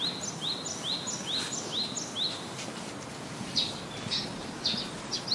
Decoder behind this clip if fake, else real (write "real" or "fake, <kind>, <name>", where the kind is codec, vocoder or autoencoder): real